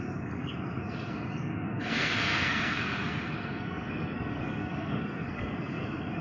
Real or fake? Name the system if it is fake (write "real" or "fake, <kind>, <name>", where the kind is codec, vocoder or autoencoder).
fake, codec, SNAC